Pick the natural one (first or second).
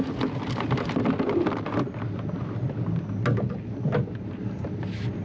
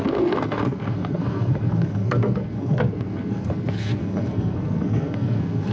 first